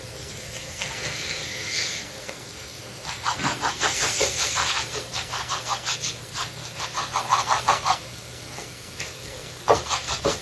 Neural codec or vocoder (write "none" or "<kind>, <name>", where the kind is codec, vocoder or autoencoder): codec, SNAC